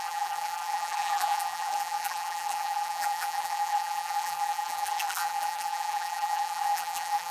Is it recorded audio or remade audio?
remade